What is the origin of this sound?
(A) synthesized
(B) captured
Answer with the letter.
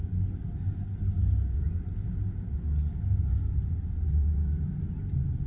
B